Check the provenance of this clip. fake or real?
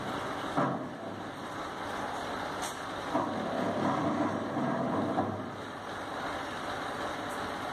real